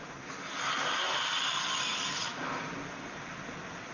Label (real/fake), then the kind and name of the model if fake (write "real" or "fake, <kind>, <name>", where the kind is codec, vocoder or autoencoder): real